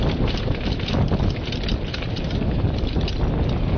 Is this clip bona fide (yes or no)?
yes